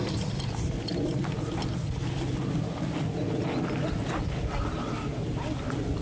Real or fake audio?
real